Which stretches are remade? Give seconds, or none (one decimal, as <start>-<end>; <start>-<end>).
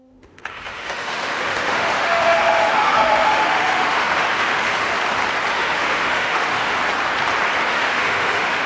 0.0-4.9; 5.5-6.8; 7.6-8.7